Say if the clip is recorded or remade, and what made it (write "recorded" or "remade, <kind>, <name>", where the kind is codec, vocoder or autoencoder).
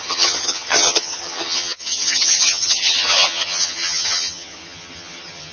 remade, vocoder, HiFi-GAN